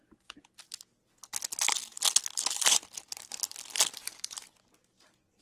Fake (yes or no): no